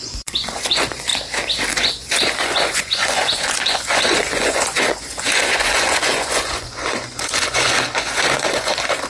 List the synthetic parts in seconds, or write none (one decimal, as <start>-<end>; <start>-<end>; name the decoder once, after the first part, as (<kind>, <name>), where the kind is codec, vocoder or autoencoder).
0.0-1.1 (vocoder, Vocos); 1.7-9.1